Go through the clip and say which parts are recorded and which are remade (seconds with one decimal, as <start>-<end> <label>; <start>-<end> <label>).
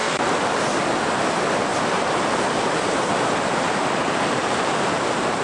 0.0-0.8 remade; 0.8-1.7 recorded; 1.7-4.9 remade; 4.9-5.4 recorded